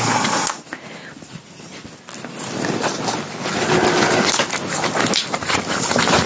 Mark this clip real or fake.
real